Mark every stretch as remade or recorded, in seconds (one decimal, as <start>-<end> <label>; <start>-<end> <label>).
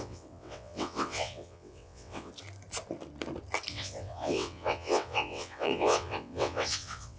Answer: 0.0-2.3 remade; 2.3-3.7 recorded; 3.7-7.2 remade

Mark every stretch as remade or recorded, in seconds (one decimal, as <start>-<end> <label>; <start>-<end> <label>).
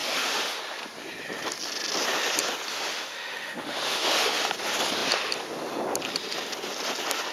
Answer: 0.0-0.6 remade; 0.6-2.7 recorded; 2.7-4.5 remade; 4.5-7.3 recorded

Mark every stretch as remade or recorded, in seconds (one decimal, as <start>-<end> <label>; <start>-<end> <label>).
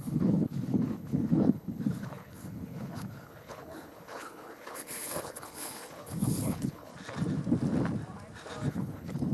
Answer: 0.0-6.9 remade; 6.9-8.7 recorded; 8.7-9.3 remade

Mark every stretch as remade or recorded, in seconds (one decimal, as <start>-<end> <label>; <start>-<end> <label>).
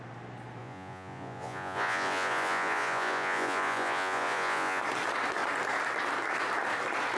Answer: 0.0-0.6 recorded; 0.6-4.8 remade; 4.8-7.2 recorded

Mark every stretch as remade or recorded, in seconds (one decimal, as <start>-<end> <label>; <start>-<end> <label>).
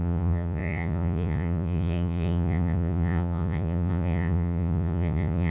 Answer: 0.0-5.5 remade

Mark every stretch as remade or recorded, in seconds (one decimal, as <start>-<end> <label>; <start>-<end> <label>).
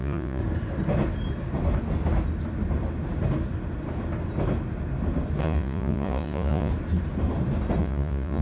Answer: 0.0-0.4 remade; 0.4-5.4 recorded; 5.4-6.7 remade; 6.7-7.8 recorded; 7.8-8.4 remade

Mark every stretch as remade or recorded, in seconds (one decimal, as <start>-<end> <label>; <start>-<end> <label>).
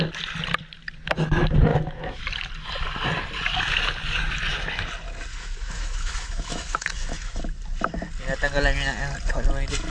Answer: 0.0-1.7 recorded; 1.7-2.2 remade; 2.2-5.3 recorded; 5.3-7.4 remade; 7.4-9.9 recorded